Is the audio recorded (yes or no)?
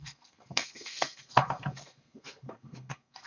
no